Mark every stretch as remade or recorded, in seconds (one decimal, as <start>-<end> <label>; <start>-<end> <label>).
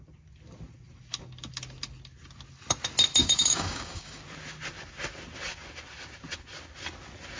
0.0-3.2 recorded; 3.2-4.2 remade; 4.2-7.4 recorded